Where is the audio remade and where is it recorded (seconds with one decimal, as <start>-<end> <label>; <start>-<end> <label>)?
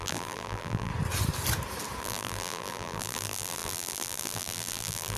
0.0-0.9 remade; 0.9-2.0 recorded; 2.0-5.2 remade